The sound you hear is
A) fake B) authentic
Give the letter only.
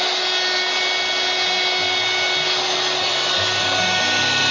B